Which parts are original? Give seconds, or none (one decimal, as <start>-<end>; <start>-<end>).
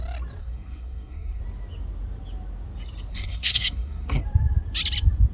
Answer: 0.0-0.4; 1.4-3.1; 4.2-5.3